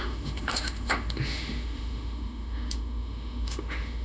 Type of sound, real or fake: fake